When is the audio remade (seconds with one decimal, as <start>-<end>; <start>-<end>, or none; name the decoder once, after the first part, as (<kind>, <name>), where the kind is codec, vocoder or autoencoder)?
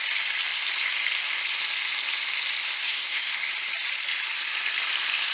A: 2.8-3.5 (codec, SNAC)